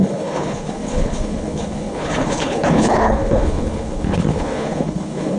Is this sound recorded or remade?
remade